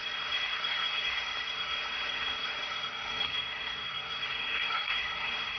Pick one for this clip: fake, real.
fake